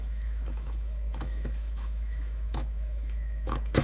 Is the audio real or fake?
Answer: fake